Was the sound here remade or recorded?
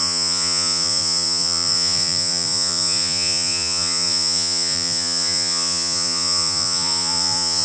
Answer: remade